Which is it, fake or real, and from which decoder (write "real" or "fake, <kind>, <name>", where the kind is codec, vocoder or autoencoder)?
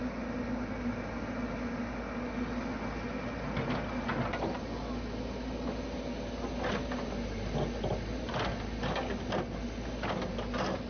real